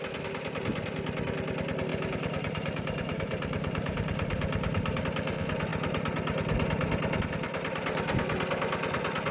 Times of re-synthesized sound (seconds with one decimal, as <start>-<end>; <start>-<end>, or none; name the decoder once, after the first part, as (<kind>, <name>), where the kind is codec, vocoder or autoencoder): 1.9-5.0 (vocoder, BigVGAN v2)